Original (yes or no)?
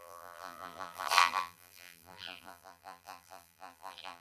no